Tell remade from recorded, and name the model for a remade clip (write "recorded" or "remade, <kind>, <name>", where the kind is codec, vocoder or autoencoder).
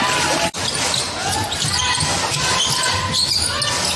recorded